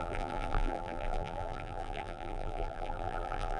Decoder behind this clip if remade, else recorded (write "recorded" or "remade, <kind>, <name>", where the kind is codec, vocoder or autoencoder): remade, vocoder, BigVGAN v2